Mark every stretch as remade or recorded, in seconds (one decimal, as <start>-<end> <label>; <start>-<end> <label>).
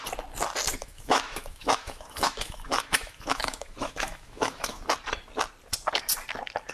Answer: 0.0-0.8 recorded; 0.8-4.8 remade; 4.8-6.7 recorded